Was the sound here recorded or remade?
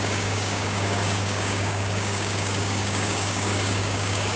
remade